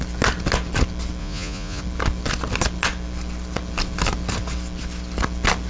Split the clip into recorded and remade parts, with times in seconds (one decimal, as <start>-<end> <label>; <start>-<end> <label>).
0.0-1.2 recorded; 1.2-1.8 remade; 1.8-5.7 recorded